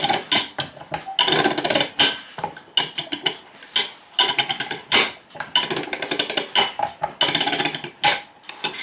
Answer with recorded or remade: recorded